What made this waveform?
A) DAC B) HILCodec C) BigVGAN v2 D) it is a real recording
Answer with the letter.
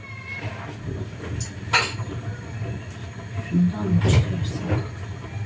D